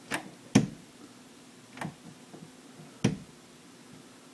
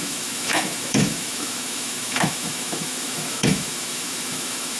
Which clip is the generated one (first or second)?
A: second